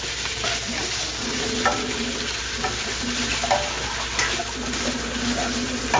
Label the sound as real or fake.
real